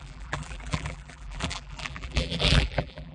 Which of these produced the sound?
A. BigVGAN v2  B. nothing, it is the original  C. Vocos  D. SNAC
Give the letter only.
A